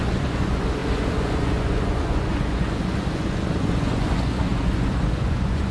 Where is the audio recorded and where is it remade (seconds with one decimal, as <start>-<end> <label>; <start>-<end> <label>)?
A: 0.0-5.7 remade